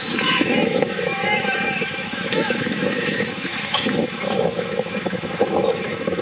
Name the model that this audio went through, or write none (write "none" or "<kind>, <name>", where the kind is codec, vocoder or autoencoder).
autoencoder, DAC-VAE